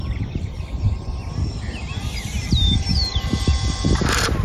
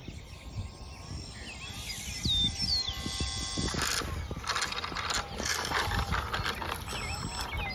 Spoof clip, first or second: first